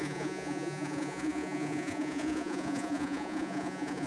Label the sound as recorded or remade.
remade